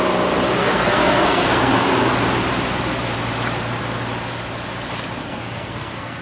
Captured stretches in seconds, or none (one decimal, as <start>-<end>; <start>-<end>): 0.0-0.6; 1.7-5.2